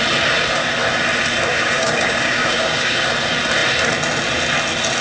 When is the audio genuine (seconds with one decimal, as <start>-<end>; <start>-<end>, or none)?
0.0-1.5; 3.0-5.0